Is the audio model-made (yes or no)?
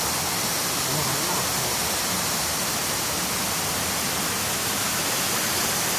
no